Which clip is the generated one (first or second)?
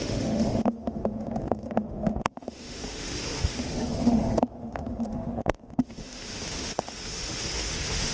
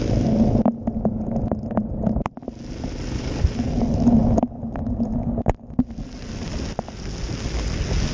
first